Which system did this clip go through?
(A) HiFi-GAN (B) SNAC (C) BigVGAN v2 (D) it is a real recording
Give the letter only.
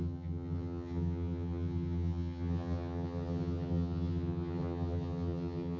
A